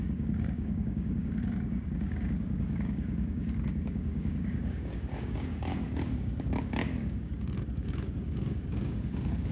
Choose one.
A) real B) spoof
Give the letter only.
B